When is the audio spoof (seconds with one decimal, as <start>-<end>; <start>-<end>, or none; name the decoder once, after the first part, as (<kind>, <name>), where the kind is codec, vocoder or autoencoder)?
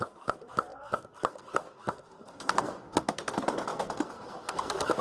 0.0-5.0 (codec, SNAC)